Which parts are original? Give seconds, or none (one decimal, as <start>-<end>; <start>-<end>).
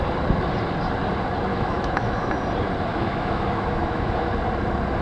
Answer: 0.0-1.5; 2.3-2.9; 4.3-5.0